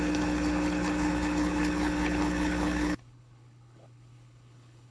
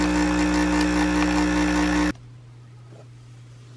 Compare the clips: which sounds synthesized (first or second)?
first